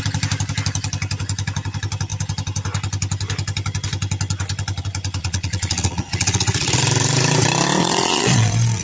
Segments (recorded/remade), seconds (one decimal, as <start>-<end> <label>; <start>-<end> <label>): 0.0-5.2 recorded; 5.2-6.8 remade; 6.8-7.8 recorded; 7.8-8.8 remade